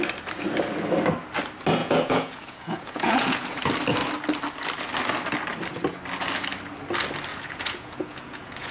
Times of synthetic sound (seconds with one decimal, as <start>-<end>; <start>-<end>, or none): 1.8-3.6; 7.3-8.7